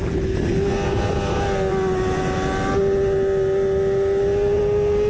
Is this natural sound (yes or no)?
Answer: yes